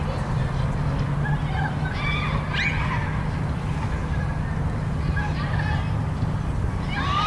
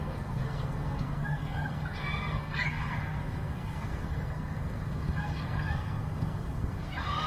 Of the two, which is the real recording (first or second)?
first